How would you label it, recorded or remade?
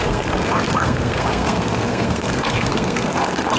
remade